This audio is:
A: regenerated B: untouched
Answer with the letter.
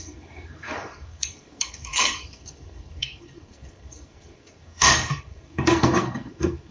A